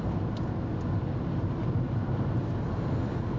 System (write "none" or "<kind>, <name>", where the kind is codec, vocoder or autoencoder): none